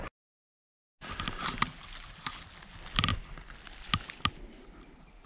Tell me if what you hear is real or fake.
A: real